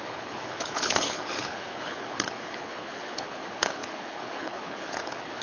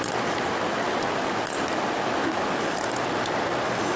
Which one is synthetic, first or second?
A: first